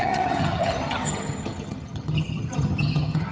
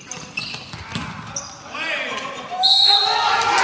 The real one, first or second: second